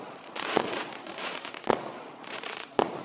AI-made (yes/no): yes